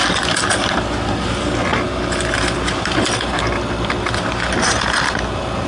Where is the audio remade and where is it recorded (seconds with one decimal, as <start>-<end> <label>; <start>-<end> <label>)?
0.0-5.7 recorded